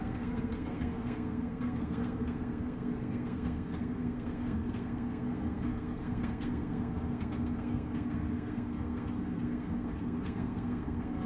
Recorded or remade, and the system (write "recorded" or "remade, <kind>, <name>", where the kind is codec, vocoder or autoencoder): remade, codec, SNAC